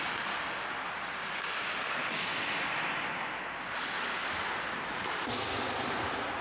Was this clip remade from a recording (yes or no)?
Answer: no